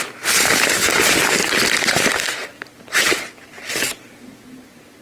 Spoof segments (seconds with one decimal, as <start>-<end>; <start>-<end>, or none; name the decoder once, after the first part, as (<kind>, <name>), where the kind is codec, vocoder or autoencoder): 1.4-4.3 (vocoder, BigVGAN v2)